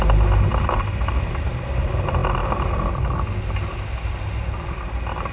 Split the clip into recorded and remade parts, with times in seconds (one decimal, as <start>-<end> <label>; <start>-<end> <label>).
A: 0.0-5.3 recorded